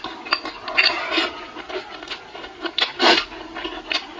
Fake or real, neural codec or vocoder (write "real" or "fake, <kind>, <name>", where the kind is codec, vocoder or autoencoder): real